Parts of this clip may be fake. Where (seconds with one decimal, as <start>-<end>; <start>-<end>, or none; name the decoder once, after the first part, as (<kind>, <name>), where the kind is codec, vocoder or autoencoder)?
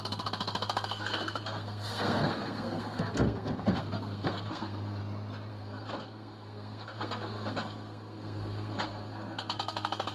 0.0-5.0 (codec, SNAC); 5.5-10.1